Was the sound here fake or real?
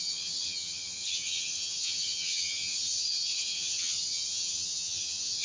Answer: fake